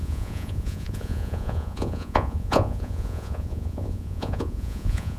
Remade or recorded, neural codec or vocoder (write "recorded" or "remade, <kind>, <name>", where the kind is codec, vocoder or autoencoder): remade, vocoder, Vocos